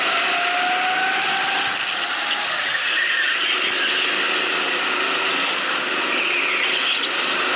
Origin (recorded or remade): recorded